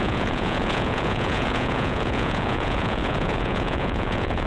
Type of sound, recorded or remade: remade